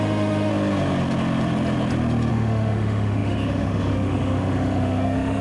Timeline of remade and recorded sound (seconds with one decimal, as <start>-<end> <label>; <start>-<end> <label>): 0.0-0.5 remade; 0.5-2.3 recorded; 2.3-5.4 remade